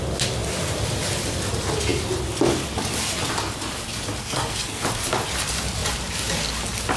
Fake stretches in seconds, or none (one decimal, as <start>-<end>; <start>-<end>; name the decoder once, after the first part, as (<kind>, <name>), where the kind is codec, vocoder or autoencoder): 4.2-4.8 (codec, SNAC)